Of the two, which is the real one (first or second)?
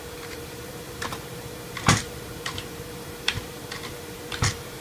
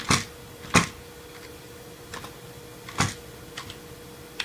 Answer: second